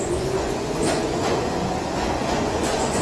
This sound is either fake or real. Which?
fake